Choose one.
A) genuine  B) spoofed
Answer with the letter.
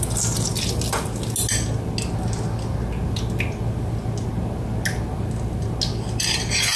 A